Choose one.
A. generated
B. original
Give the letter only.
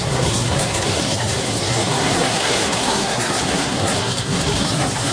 A